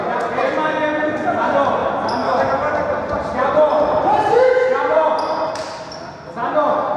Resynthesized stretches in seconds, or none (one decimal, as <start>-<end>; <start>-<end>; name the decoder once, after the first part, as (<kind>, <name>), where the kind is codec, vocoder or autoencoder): 1.8-4.4 (vocoder, BigVGAN v2)